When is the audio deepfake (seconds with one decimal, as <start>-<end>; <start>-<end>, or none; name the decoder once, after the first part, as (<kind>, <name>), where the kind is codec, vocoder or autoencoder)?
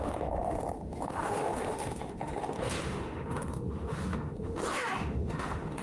0.0-5.8 (autoencoder, DAC-VAE)